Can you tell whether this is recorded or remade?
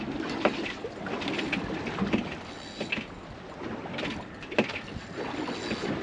recorded